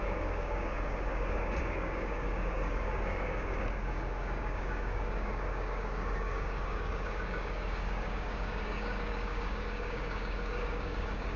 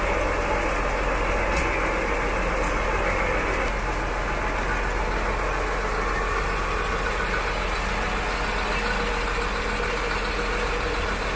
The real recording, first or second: second